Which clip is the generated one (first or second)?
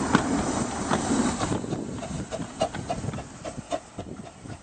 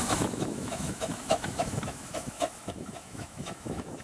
second